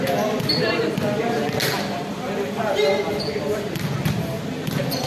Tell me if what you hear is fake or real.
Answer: real